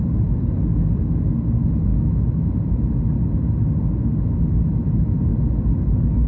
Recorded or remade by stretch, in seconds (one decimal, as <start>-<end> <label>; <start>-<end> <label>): 0.0-1.9 recorded; 1.9-2.5 remade; 2.5-6.3 recorded